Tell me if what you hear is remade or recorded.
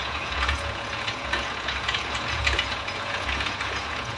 remade